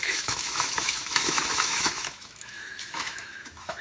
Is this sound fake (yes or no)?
yes